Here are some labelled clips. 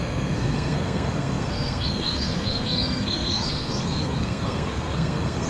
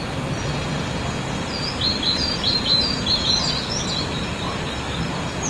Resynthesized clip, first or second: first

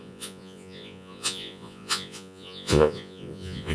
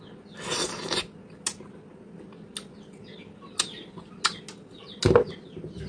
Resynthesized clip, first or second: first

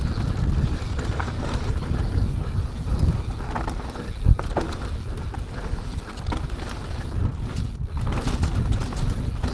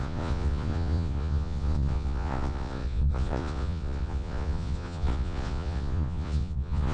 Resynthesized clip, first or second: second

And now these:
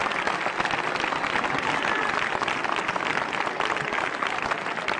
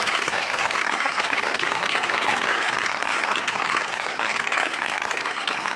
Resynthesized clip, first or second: second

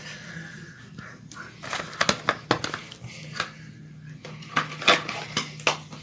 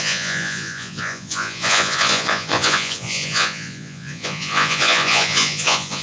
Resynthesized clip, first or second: second